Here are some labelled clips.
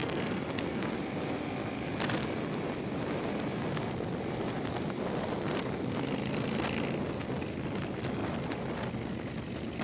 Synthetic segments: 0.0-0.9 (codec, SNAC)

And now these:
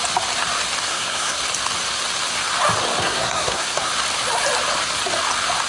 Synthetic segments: 0.9-1.4 (codec, SNAC); 3.0-3.9

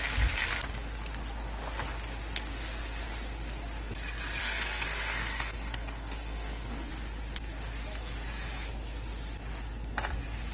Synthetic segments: 4.4-6.9 (codec, SNAC)

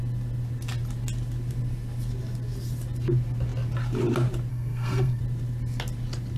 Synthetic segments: 4.5-5.2 (codec, SNAC)

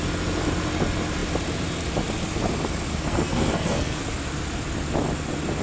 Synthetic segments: 2.9-4.0 (codec, SNAC)

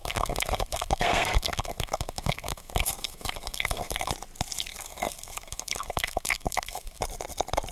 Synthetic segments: 0.0-4.1 (codec, SNAC); 4.7-7.0